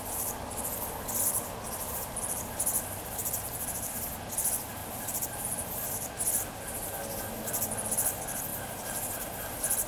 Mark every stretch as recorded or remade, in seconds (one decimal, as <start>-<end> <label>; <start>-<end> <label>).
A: 0.0-3.2 recorded; 3.2-4.0 remade; 4.0-4.8 recorded; 4.8-5.7 remade; 5.7-8.5 recorded; 8.5-9.5 remade; 9.5-9.9 recorded